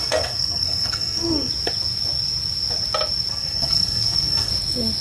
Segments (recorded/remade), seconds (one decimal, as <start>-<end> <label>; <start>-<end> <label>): 0.0-1.5 remade; 1.5-3.3 recorded; 3.3-4.5 remade; 4.5-5.0 recorded